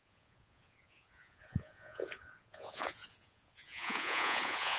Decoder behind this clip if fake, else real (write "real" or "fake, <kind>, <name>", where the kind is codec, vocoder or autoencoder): fake, vocoder, Vocos